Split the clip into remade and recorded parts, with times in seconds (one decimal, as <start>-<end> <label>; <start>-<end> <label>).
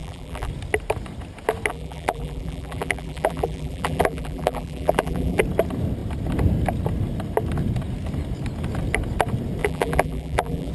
0.0-0.5 remade; 0.5-1.7 recorded; 1.7-5.4 remade; 5.4-9.6 recorded; 9.6-10.7 remade